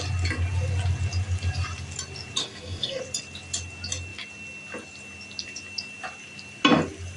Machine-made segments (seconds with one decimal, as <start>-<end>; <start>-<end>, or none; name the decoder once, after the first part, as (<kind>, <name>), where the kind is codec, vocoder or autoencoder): 2.4-3.0 (codec, DAC)